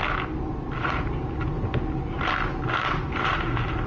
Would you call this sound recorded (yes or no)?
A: yes